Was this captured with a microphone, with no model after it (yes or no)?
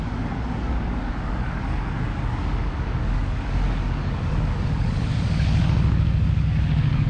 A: no